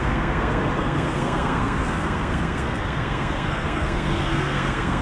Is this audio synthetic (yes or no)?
yes